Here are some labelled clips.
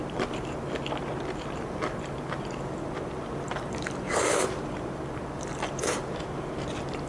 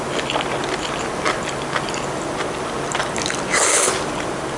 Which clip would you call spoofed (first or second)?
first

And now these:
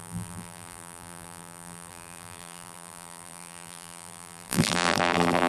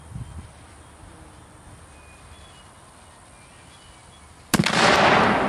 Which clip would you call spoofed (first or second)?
first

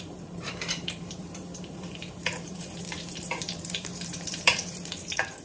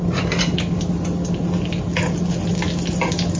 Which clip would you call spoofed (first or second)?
first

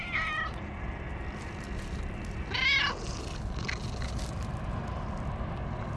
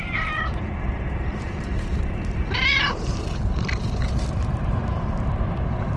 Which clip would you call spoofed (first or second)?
second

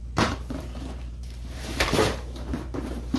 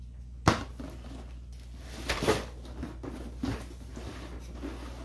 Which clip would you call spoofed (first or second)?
first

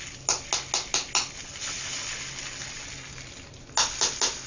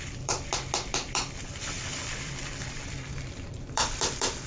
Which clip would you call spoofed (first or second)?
second